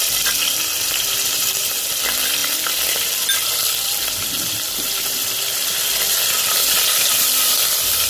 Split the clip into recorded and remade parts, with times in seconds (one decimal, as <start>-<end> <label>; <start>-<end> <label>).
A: 0.0-8.1 recorded